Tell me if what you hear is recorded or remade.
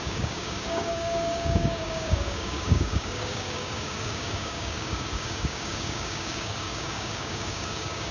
remade